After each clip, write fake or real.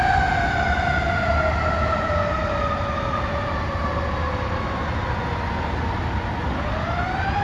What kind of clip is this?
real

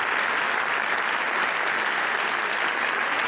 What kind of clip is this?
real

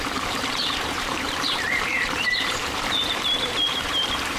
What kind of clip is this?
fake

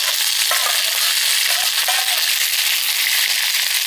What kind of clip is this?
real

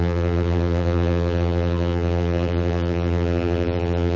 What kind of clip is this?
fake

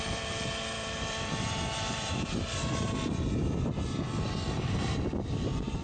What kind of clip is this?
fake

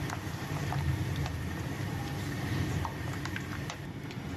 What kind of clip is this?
fake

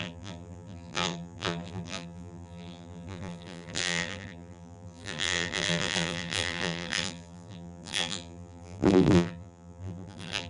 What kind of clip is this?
fake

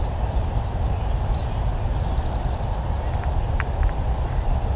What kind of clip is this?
real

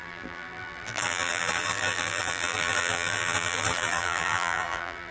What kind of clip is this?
fake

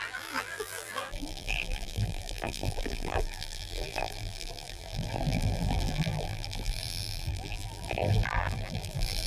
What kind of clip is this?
fake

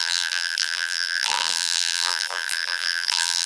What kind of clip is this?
fake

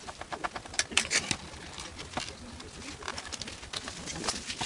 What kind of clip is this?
real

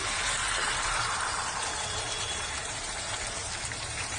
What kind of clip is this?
fake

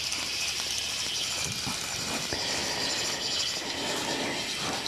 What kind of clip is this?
real